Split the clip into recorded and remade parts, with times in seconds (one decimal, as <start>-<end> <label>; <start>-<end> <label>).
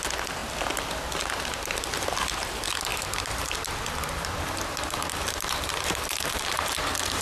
0.0-2.9 recorded; 2.9-6.7 remade; 6.7-7.2 recorded